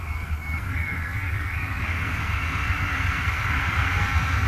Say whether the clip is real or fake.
fake